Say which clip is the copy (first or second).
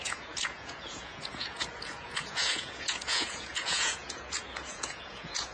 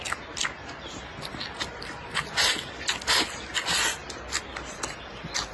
first